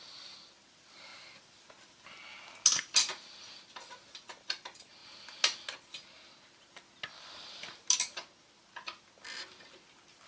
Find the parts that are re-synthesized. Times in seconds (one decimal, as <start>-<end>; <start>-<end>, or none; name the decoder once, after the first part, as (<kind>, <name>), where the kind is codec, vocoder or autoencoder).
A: none